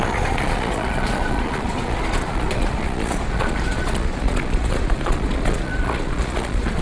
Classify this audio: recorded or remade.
remade